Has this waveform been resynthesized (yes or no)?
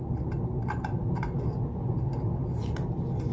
no